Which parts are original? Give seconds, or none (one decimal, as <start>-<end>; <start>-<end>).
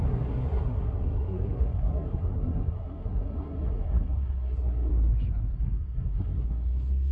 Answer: 4.9-5.5